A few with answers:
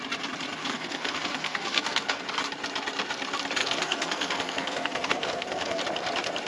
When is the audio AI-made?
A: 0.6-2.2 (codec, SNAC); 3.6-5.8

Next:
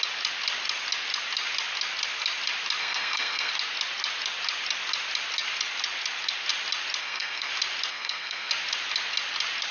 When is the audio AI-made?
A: 2.8-3.5 (codec, SNAC); 7.0-7.5; 7.9-8.5

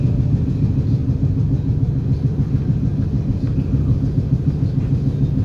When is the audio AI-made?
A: none